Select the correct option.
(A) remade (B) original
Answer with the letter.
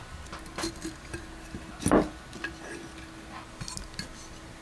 B